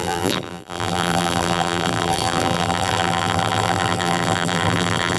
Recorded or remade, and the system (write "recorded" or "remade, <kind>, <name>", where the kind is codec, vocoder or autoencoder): remade, vocoder, BigVGAN v2